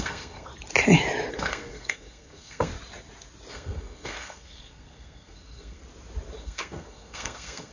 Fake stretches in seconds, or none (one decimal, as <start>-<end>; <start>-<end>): 0.0-0.5; 1.3-2.7; 3.5-5.8; 6.4-7.7